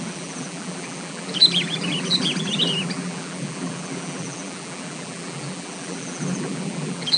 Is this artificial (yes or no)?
yes